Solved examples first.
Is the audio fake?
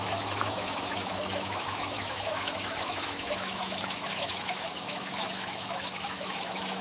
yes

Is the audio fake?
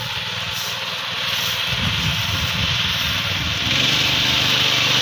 no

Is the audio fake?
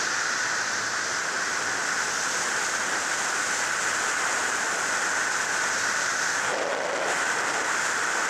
no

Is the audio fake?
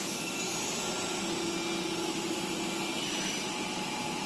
no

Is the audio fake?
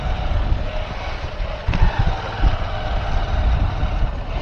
no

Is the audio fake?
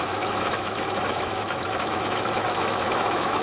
yes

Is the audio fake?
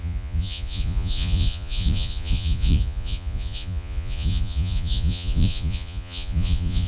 yes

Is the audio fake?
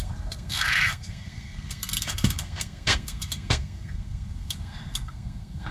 yes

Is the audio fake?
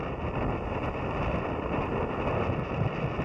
no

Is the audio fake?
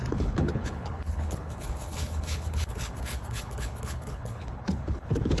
yes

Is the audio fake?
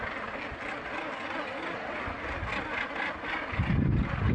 no